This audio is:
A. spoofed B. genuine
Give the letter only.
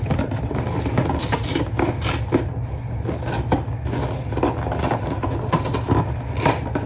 B